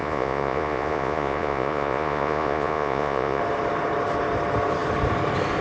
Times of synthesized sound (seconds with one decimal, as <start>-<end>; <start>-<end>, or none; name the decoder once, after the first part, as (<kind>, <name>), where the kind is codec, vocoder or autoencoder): 0.0-3.4 (vocoder, Vocos)